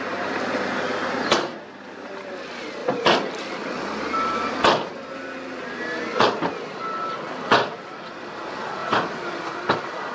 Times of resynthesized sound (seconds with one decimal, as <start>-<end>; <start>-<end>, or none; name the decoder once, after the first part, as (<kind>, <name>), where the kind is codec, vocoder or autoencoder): none